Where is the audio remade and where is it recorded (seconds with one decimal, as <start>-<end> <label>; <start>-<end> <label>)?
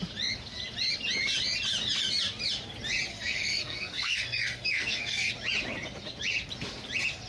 0.0-3.1 recorded; 3.1-5.3 remade; 5.3-7.3 recorded